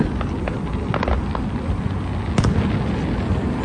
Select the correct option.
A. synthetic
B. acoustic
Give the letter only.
B